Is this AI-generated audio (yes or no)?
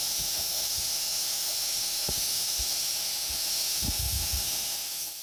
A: yes